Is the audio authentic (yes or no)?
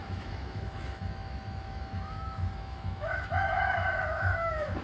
no